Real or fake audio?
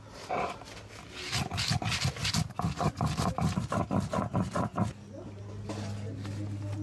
real